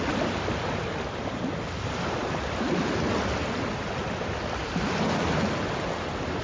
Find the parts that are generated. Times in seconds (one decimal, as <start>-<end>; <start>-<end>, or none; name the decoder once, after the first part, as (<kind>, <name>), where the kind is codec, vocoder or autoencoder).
none